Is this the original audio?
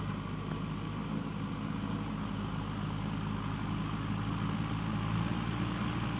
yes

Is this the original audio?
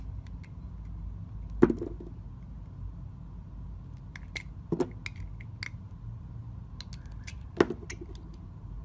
yes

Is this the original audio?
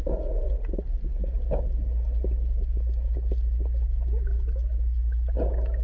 yes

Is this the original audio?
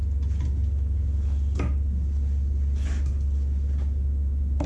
yes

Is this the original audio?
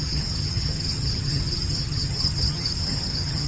no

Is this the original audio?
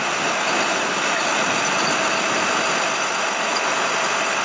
yes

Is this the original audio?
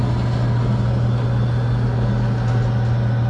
yes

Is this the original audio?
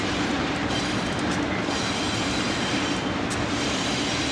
yes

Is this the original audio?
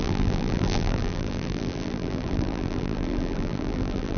no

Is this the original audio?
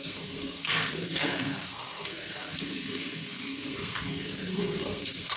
no